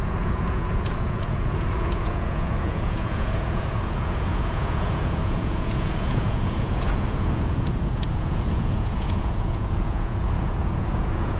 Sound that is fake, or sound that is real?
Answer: fake